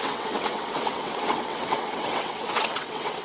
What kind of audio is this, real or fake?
fake